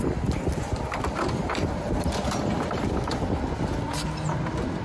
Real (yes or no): yes